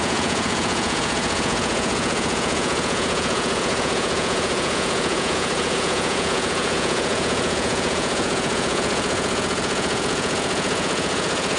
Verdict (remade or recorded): remade